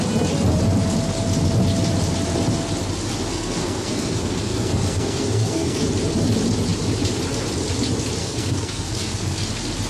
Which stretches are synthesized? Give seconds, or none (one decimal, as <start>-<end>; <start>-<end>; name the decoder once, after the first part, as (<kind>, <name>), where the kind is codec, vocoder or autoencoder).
3.3-5.8 (codec, SNAC); 8.2-9.5